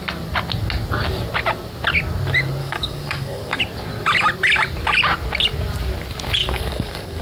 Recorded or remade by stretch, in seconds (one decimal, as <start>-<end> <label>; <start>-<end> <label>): 0.0-2.6 recorded; 2.6-3.6 remade; 3.6-6.4 recorded; 6.4-7.2 remade

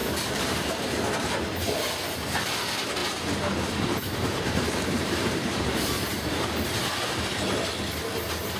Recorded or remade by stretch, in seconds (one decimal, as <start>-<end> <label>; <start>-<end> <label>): 0.0-0.7 remade; 0.7-3.0 recorded; 3.0-6.3 remade; 6.3-8.6 recorded

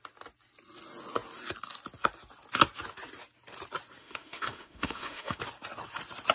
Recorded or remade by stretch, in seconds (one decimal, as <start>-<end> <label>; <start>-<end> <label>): 0.0-4.0 recorded; 4.0-5.4 remade; 5.4-6.3 recorded

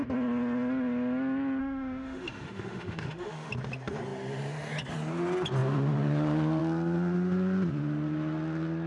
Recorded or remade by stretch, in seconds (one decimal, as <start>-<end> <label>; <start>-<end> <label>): 0.0-1.6 recorded; 1.6-3.5 remade; 3.5-8.9 recorded

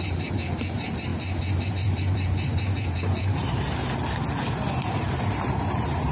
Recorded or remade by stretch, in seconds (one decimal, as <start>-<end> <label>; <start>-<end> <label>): 0.0-1.1 remade; 1.1-1.7 recorded; 1.7-3.8 remade; 3.8-4.9 recorded; 4.9-6.1 remade

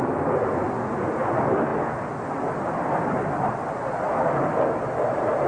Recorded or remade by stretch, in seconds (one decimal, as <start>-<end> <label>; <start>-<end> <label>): 0.0-5.5 recorded

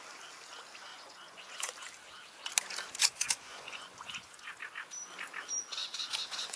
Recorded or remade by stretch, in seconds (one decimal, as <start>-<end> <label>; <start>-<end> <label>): 0.0-0.9 recorded; 0.9-1.7 remade; 1.7-3.0 recorded; 3.0-4.6 remade; 4.6-5.8 recorded; 5.8-6.6 remade

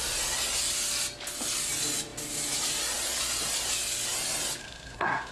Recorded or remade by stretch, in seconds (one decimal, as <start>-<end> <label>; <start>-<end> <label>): 0.0-4.6 recorded; 4.6-5.3 remade